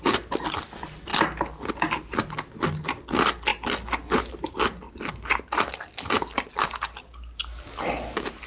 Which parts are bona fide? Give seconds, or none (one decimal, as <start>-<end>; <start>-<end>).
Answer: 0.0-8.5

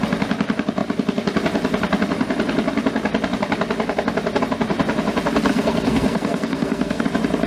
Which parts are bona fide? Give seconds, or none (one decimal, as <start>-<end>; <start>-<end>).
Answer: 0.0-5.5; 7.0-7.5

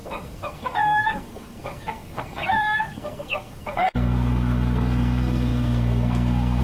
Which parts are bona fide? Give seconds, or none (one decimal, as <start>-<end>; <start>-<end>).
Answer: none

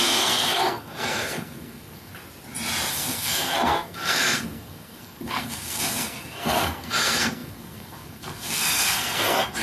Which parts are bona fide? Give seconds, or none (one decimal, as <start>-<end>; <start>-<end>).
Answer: 2.1-2.9

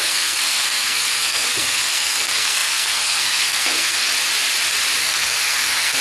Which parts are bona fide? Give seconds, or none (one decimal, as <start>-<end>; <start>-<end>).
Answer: 4.1-5.0